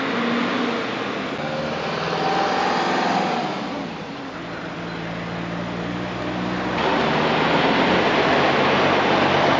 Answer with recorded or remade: recorded